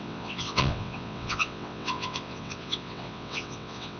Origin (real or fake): fake